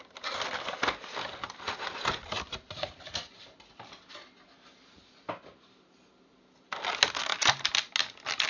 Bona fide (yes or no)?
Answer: yes